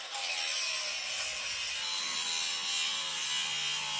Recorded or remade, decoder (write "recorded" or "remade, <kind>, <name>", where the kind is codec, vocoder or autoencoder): recorded